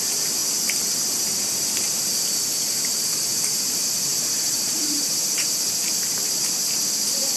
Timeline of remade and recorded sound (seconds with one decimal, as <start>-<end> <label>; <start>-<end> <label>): 0.0-0.4 remade; 0.4-1.5 recorded; 1.5-2.1 remade; 2.1-2.7 recorded; 2.7-7.4 remade